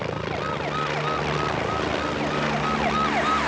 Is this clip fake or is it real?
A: real